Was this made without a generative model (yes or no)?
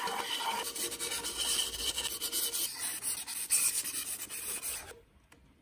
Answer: yes